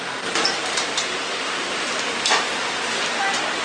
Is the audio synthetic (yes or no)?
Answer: yes